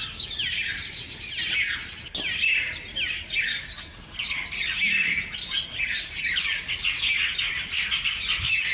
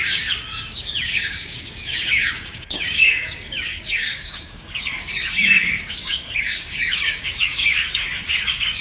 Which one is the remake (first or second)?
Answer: second